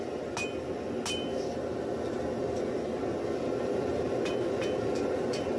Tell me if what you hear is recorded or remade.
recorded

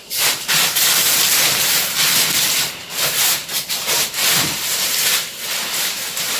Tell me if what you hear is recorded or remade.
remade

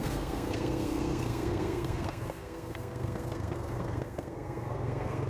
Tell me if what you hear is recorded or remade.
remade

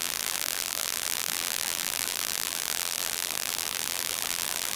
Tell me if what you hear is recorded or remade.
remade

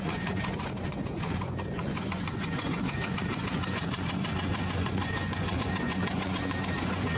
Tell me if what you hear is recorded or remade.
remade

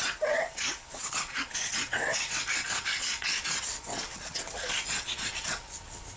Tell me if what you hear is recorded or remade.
remade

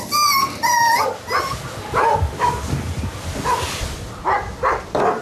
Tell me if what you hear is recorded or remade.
recorded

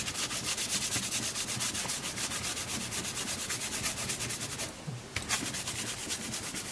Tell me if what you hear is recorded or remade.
recorded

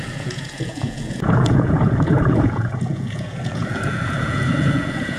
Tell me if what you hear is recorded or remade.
remade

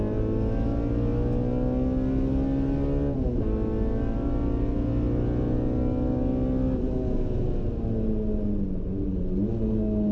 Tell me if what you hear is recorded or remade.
recorded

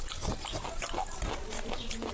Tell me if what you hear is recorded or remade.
recorded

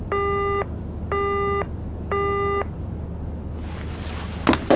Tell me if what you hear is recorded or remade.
recorded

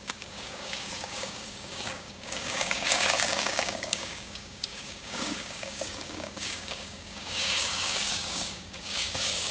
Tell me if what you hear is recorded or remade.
remade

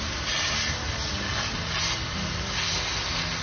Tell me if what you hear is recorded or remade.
recorded